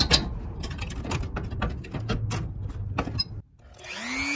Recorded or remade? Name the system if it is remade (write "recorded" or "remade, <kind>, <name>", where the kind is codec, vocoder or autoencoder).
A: recorded